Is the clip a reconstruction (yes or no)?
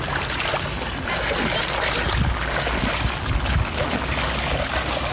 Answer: no